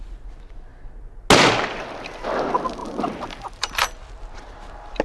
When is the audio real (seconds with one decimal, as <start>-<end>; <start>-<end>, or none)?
0.0-2.8; 3.9-5.0